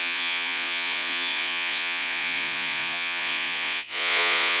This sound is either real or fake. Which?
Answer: fake